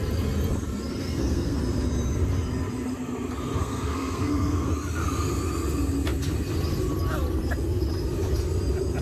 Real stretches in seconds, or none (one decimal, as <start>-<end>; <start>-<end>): 0.0-1.0; 1.6-3.6; 4.7-9.0